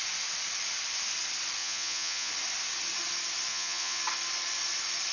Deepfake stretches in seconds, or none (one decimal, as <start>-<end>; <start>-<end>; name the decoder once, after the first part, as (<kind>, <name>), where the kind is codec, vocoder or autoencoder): 1.6-2.3 (vocoder, Vocos); 3.5-4.0